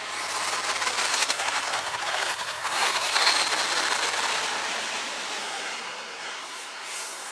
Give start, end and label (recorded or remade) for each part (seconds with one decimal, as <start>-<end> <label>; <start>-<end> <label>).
0.0-1.1 recorded; 1.1-3.3 remade; 3.3-5.4 recorded; 5.4-7.3 remade